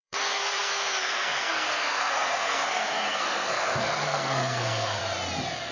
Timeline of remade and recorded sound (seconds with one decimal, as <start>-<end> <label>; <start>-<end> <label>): 0.0-5.0 remade; 5.0-5.7 recorded